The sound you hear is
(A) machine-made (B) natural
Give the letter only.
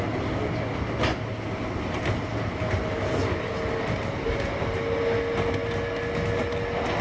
B